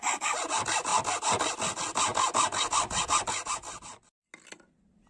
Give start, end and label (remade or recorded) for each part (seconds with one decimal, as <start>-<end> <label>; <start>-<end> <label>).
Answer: 0.0-5.1 recorded